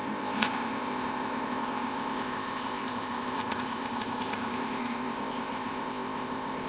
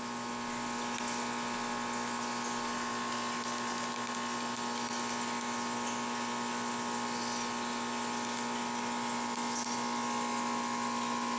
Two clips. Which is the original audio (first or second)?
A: second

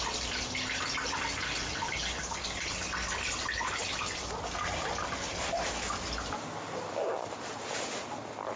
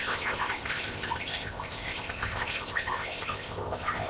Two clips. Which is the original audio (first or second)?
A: first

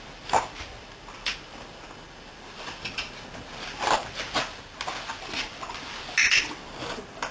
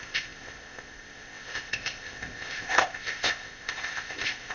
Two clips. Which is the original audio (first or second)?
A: first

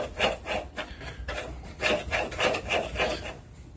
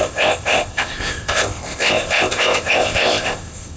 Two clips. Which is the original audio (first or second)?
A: first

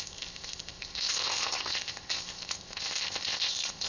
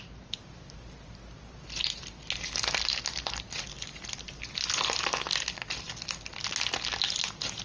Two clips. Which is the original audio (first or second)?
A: second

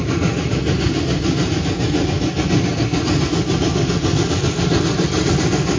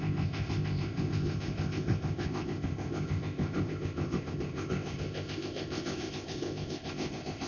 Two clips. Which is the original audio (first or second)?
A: first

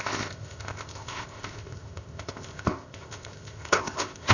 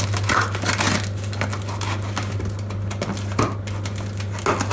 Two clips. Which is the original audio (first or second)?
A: second